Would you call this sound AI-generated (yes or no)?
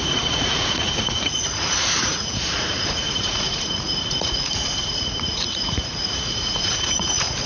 yes